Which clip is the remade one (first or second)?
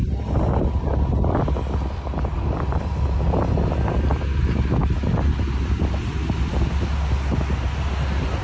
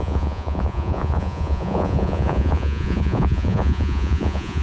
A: second